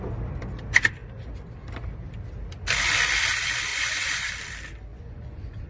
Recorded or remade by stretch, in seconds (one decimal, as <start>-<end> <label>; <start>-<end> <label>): 0.0-3.7 recorded; 3.7-4.3 remade; 4.3-4.9 recorded; 4.9-5.7 remade